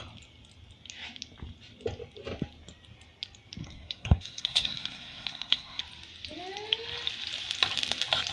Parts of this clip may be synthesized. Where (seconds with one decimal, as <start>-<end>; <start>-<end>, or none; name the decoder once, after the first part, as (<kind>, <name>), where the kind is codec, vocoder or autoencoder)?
3.6-5.8 (codec, SNAC)